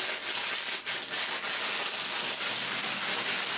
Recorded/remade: recorded